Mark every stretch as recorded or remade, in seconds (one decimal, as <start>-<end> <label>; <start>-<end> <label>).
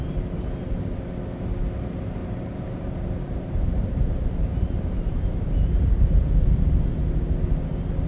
0.0-2.2 recorded; 2.2-6.1 remade; 6.1-8.1 recorded